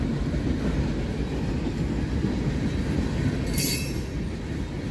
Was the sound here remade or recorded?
recorded